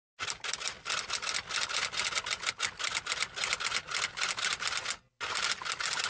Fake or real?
real